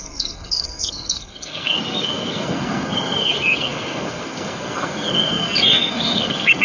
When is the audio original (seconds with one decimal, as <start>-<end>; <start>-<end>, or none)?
none